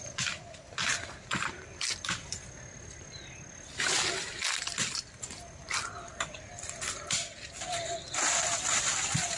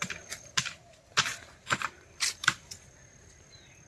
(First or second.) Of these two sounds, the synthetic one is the second